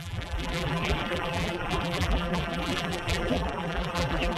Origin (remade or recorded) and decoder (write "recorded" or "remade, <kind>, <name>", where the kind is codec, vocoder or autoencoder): remade, vocoder, BigVGAN v2